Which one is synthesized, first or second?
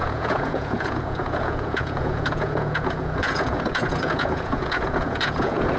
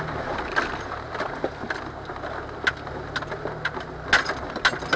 first